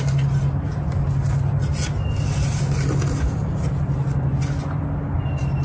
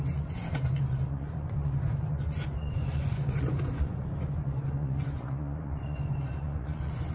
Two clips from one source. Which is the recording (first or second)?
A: first